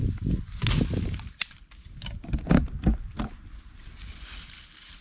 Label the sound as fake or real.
real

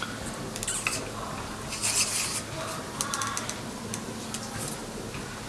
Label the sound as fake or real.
real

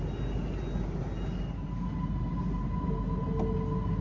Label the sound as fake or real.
real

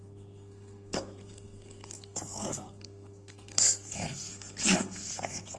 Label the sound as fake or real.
fake